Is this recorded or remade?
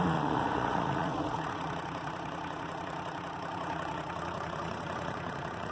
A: remade